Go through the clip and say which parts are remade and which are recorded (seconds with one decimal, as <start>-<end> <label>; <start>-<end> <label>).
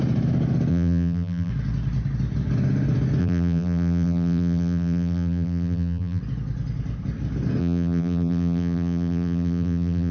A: 0.0-0.7 recorded; 0.7-1.5 remade; 1.5-3.2 recorded; 3.2-6.2 remade; 6.2-7.6 recorded; 7.6-10.1 remade